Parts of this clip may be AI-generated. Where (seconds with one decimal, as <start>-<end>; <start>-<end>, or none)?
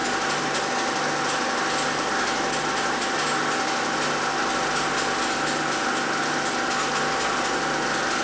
none